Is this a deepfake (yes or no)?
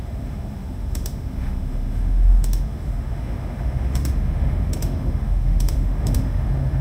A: yes